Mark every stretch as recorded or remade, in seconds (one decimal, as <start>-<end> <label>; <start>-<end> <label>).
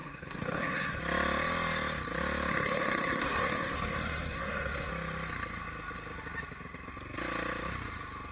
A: 0.0-1.0 remade; 1.0-2.5 recorded; 2.5-4.9 remade; 4.9-8.3 recorded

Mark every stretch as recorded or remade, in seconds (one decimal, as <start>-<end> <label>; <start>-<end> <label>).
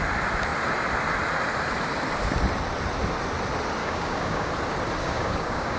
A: 0.0-3.8 recorded; 3.8-4.5 remade; 4.5-5.0 recorded; 5.0-5.8 remade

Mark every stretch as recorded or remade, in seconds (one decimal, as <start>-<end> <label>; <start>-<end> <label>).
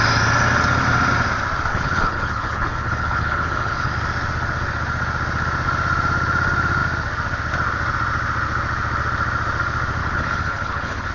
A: 0.0-1.7 recorded; 1.7-3.9 remade; 3.9-10.0 recorded; 10.0-11.1 remade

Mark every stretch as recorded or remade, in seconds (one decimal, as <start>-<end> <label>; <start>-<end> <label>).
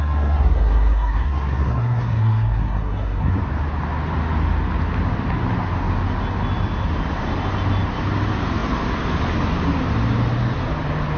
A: 0.0-3.4 remade; 3.4-11.2 recorded